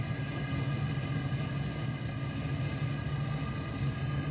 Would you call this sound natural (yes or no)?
yes